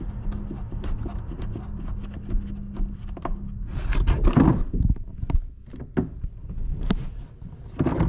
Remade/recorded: recorded